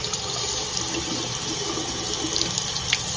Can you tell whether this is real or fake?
real